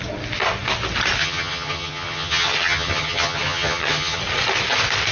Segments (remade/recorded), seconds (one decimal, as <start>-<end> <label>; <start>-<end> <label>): 0.0-1.2 recorded; 1.2-4.2 remade; 4.2-5.1 recorded